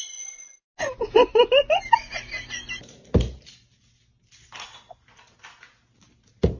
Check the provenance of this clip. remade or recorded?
recorded